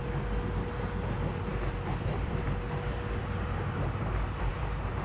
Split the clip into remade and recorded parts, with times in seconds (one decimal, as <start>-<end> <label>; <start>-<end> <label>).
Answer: 0.0-1.5 recorded; 1.5-4.5 remade; 4.5-5.0 recorded